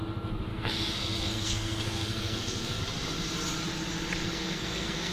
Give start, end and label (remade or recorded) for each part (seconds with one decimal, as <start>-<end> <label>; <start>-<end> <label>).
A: 0.0-0.5 recorded; 0.5-2.8 remade; 2.8-4.2 recorded; 4.2-5.1 remade